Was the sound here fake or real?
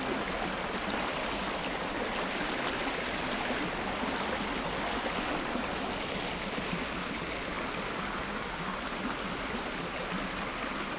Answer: real